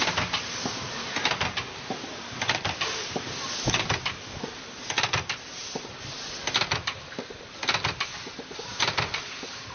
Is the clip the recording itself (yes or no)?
yes